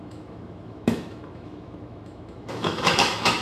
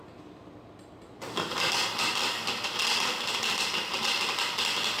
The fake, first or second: first